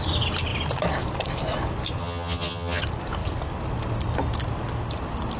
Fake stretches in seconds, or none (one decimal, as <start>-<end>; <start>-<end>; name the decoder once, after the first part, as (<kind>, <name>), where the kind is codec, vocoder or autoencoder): 2.0-2.8 (vocoder, HiFi-GAN)